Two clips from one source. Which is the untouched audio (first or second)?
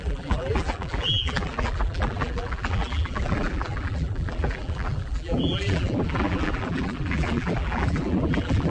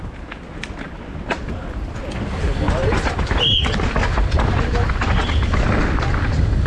second